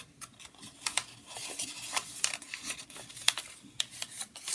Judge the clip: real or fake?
real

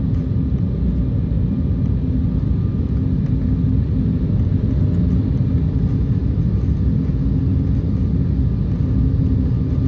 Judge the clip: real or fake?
real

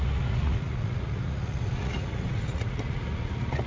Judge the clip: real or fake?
fake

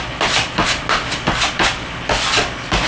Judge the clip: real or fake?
real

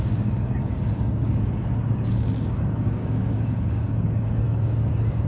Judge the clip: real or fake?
fake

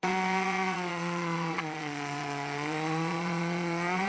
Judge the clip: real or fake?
fake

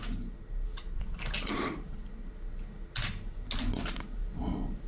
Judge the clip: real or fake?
real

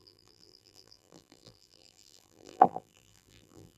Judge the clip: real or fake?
fake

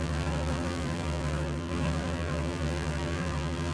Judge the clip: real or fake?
fake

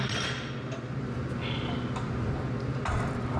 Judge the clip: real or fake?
real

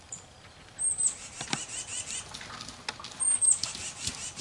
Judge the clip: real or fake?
real